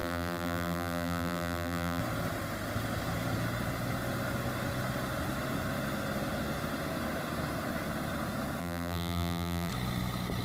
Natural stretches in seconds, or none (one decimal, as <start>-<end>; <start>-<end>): 2.0-8.6; 9.7-10.4